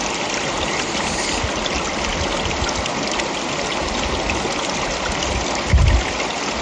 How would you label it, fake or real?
real